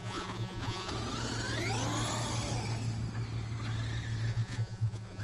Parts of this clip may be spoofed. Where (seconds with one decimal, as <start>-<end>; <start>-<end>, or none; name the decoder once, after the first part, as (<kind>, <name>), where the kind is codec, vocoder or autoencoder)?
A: 0.0-0.9 (vocoder, Vocos); 4.3-5.2